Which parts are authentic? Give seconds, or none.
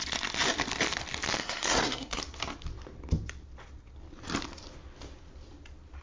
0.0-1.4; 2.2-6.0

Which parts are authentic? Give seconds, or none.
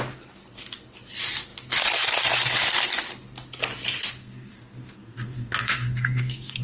0.0-4.2